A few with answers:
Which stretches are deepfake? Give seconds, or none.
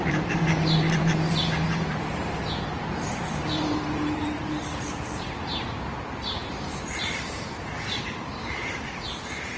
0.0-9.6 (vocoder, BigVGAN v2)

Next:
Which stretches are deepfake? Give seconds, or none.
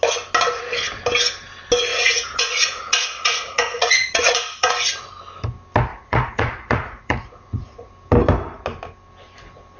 1.9-4.7 (vocoder, Vocos); 5.9-7.9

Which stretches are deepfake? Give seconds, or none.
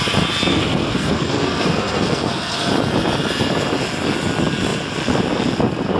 0.5-2.7 (codec, SNAC)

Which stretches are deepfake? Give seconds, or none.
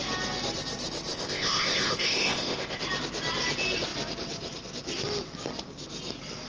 1.1-2.8 (codec, ZipCodec)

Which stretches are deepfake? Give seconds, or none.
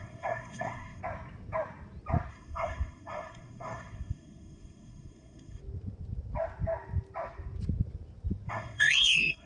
0.0-1.0 (codec, SNAC); 2.3-5.6; 8.5-9.5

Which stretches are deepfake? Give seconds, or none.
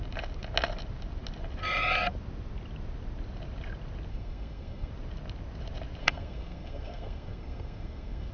4.1-4.9 (codec, SNAC); 6.0-8.3